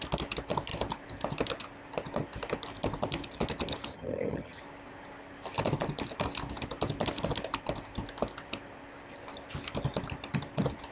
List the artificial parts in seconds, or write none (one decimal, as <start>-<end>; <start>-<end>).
3.9-4.6